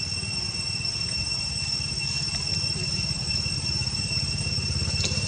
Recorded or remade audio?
recorded